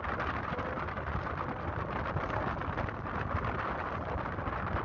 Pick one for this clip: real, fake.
real